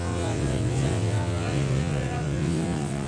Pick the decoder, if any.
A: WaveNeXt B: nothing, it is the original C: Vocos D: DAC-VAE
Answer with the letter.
A